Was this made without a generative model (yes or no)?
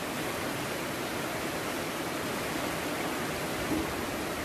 no